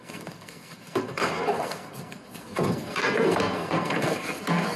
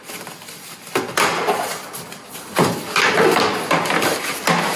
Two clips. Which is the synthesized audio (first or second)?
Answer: first